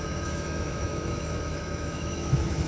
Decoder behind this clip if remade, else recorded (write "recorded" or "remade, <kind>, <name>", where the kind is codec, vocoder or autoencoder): remade, autoencoder, DAC-VAE